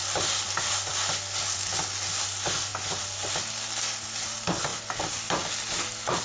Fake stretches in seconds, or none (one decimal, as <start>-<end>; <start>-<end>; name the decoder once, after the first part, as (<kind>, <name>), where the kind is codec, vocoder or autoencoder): none